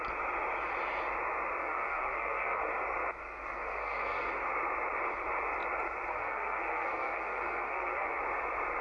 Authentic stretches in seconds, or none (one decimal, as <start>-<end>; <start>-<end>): 0.0-1.6; 2.6-3.2; 4.3-6.1; 8.2-8.8